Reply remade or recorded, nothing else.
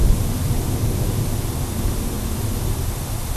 recorded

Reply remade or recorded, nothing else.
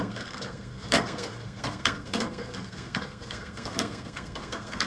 remade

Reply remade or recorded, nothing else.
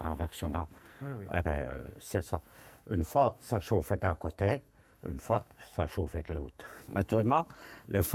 remade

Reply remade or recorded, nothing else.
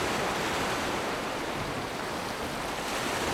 recorded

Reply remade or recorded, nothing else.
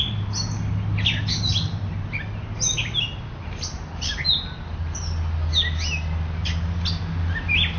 recorded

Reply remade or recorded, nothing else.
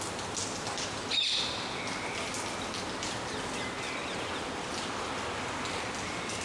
recorded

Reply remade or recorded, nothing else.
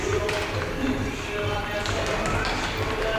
recorded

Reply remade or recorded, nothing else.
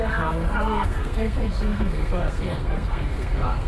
remade